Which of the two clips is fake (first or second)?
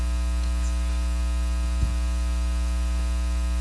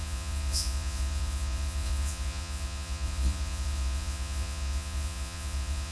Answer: second